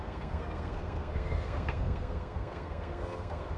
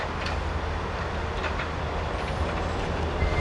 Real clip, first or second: second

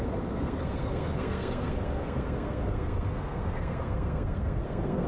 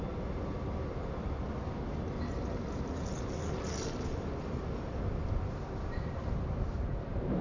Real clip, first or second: second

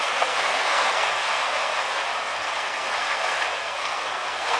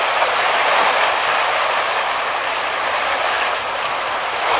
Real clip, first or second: second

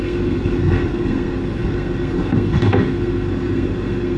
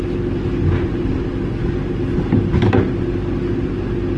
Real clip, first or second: second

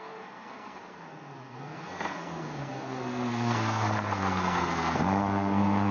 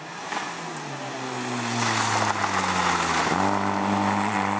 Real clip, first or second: second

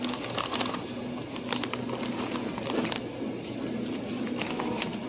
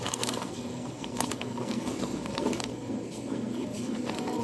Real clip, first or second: first